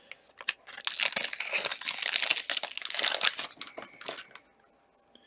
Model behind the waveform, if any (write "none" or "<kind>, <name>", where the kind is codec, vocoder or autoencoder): none